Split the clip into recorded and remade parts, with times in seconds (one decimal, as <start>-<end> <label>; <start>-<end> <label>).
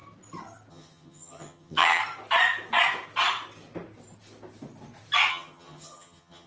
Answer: 0.0-0.7 recorded; 0.7-2.0 remade; 2.0-5.3 recorded; 5.3-6.5 remade